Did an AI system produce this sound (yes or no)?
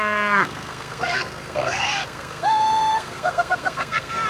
yes